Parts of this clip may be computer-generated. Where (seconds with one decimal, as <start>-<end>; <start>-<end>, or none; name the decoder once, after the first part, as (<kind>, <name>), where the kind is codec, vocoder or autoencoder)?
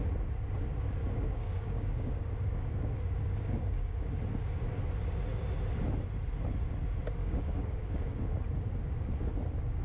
1.0-4.1 (codec, DAC); 7.2-8.5